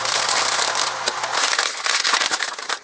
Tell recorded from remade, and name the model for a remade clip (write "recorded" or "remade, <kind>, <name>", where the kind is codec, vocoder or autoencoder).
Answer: recorded